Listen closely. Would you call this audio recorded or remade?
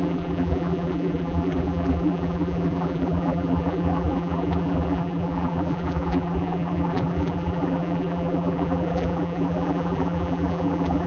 remade